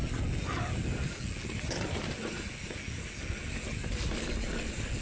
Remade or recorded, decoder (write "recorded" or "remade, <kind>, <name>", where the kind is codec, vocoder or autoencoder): recorded